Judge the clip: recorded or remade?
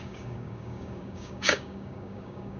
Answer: remade